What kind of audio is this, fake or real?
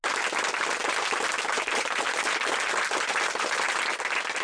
real